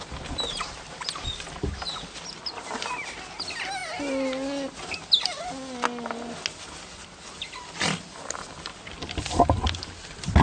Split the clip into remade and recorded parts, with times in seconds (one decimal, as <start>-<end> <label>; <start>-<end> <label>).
0.0-10.4 recorded